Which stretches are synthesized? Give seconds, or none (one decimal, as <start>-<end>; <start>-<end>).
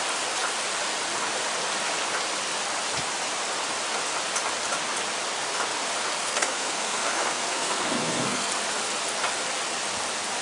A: 6.2-8.5